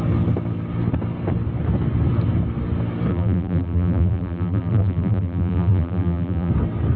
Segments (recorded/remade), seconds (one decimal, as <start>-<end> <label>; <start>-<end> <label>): 0.0-3.1 recorded; 3.1-6.5 remade; 6.5-7.0 recorded